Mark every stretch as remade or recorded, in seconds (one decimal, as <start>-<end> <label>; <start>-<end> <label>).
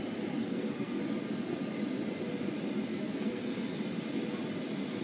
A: 0.0-0.4 recorded; 0.4-1.0 remade; 1.0-2.9 recorded; 2.9-3.8 remade; 3.8-5.0 recorded